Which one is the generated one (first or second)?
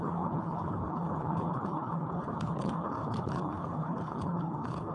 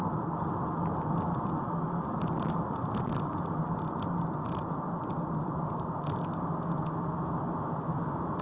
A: first